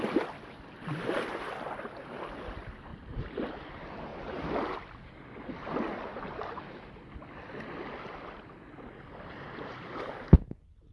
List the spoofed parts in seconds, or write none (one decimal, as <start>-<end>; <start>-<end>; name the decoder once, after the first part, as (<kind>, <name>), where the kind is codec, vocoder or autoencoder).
2.9-3.5 (vocoder, BigVGAN v2); 4.1-4.8; 6.1-6.6